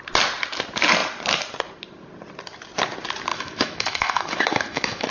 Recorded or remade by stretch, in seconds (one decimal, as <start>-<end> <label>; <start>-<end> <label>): 0.0-3.3 recorded; 3.3-5.1 remade